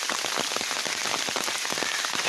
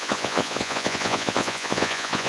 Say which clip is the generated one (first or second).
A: second